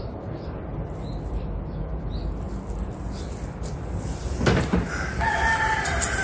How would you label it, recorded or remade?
recorded